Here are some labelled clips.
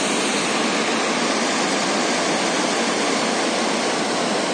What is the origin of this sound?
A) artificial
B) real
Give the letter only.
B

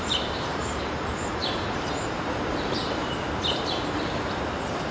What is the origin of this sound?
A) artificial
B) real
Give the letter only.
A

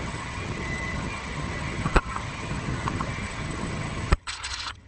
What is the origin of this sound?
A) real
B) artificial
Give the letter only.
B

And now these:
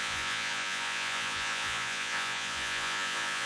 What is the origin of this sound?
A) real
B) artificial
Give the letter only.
B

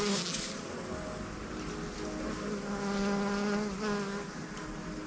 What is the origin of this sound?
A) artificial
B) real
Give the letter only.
B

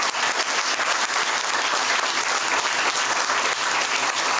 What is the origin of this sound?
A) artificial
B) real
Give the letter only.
B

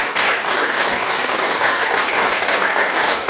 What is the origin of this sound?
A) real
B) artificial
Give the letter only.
B